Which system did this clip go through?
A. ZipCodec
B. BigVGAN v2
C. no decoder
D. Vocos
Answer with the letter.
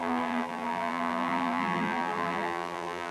B